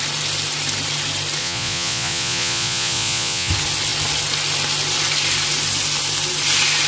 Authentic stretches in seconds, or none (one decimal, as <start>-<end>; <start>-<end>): 0.0-1.4; 3.5-6.9